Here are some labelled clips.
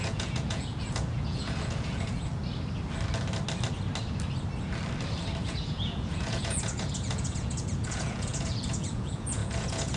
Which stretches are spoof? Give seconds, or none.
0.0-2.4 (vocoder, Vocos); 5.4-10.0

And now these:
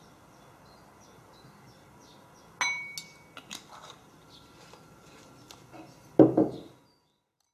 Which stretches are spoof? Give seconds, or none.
none

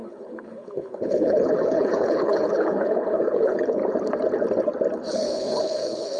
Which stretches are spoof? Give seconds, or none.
0.0-3.8 (codec, HILCodec); 5.1-6.2

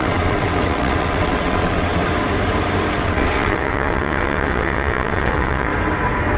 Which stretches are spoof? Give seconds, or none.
0.0-2.0 (vocoder, WaveNeXt); 2.9-5.7

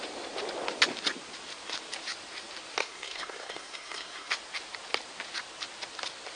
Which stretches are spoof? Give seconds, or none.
2.8-4.3 (codec, SNAC)

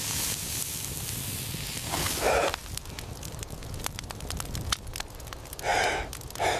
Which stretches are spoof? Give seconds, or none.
none

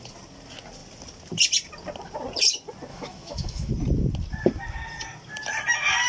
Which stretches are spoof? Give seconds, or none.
2.9-3.7 (autoencoder, DAC-VAE)